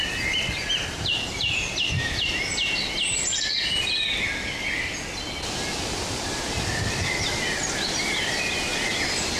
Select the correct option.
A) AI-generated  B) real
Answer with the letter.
B